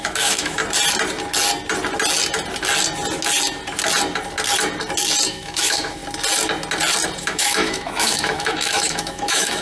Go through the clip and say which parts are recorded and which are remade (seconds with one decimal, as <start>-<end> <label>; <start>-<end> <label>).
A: 0.0-0.6 remade; 0.6-5.3 recorded; 5.3-6.0 remade; 6.0-7.2 recorded; 7.2-9.6 remade

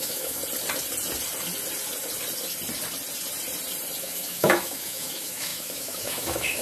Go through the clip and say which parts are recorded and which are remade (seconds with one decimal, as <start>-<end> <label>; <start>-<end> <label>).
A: 0.0-0.4 remade; 0.4-4.0 recorded; 4.0-6.6 remade

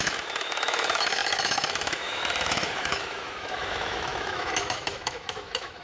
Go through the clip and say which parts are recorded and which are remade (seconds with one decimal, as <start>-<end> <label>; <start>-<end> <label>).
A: 0.0-5.8 remade

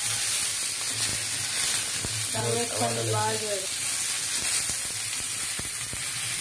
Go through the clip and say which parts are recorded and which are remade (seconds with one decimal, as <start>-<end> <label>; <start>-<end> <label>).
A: 0.0-6.4 recorded

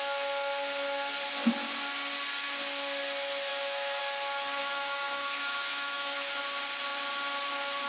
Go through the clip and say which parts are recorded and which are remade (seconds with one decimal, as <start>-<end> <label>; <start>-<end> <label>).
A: 0.0-3.5 recorded; 3.5-4.0 remade; 4.0-4.6 recorded; 4.6-6.4 remade; 6.4-7.9 recorded

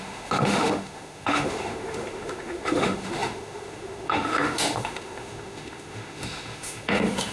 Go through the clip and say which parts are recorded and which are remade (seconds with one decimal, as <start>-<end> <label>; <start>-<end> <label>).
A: 0.0-7.3 remade

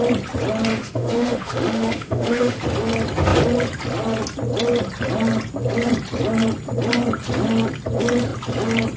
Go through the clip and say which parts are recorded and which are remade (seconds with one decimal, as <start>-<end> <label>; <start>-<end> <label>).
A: 0.0-0.7 recorded; 0.7-2.6 remade; 2.6-9.0 recorded

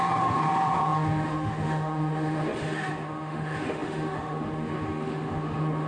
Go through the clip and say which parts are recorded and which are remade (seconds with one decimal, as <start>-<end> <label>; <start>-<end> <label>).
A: 0.0-5.9 remade